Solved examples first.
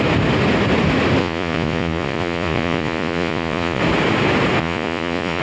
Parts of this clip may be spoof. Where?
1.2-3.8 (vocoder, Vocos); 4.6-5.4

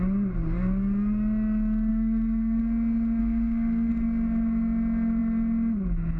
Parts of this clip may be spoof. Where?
1.9-2.6 (codec, SNAC); 3.2-3.9

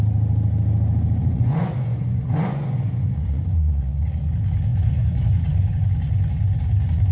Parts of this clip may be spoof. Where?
1.2-4.3 (vocoder, Vocos); 4.7-5.8